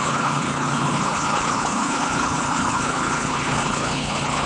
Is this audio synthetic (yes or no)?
yes